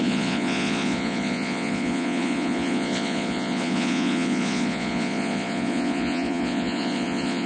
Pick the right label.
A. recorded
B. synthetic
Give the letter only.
B